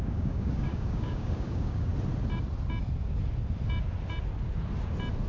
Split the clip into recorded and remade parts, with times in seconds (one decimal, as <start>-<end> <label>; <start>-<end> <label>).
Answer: 0.0-1.9 remade; 1.9-5.3 recorded

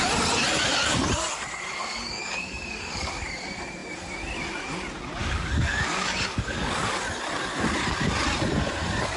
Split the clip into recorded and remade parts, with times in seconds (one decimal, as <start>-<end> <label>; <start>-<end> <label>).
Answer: 0.0-1.8 recorded; 1.8-3.1 remade; 3.1-5.2 recorded; 5.2-7.0 remade; 7.0-9.2 recorded

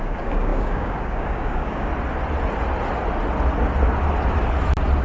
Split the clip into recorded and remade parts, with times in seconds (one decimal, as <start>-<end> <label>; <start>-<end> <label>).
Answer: 0.0-1.9 remade; 1.9-5.0 recorded

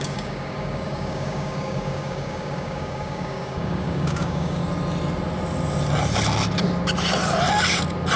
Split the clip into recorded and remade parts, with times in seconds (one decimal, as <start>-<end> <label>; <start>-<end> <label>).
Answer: 0.0-4.6 remade; 4.6-8.2 recorded

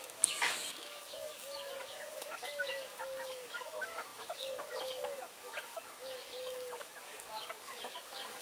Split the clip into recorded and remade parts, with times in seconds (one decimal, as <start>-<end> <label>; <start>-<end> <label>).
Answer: 0.0-8.4 remade

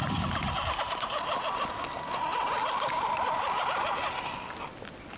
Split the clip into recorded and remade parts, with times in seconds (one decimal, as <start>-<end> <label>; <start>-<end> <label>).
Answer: 0.0-5.2 recorded

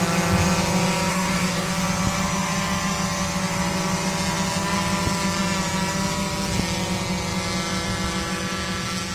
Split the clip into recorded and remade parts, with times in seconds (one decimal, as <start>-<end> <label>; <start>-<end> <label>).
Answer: 0.0-1.1 recorded; 1.1-1.7 remade; 1.7-9.1 recorded